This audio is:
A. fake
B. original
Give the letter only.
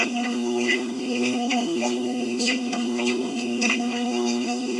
A